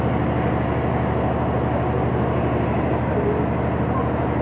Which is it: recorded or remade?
recorded